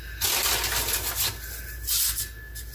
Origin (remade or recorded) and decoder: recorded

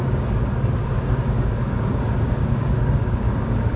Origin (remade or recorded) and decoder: remade, codec, DAC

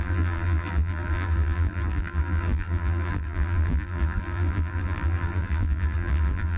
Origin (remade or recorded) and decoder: remade, vocoder, BigVGAN v2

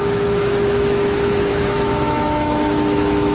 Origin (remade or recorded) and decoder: remade, autoencoder, DAC-VAE